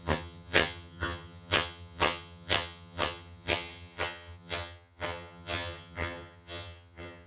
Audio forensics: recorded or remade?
remade